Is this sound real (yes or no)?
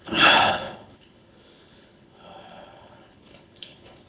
no